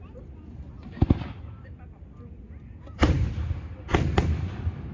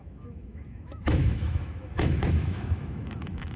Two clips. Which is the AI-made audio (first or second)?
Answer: second